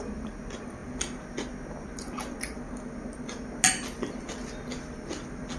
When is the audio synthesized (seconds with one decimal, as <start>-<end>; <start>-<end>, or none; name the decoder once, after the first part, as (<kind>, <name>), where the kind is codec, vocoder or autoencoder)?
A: none